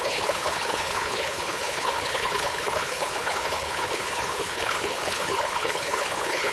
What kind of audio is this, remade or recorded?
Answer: remade